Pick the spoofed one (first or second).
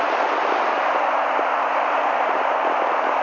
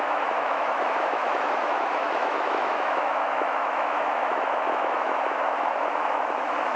second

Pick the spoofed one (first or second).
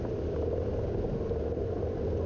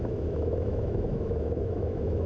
second